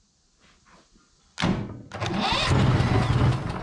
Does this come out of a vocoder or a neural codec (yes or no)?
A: no